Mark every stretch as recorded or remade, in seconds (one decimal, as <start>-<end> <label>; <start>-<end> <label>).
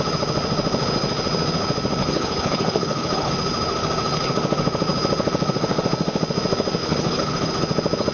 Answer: 0.0-2.0 recorded; 2.0-3.3 remade; 3.3-6.8 recorded; 6.8-7.5 remade; 7.5-8.1 recorded